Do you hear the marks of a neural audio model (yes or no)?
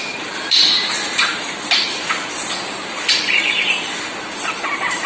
yes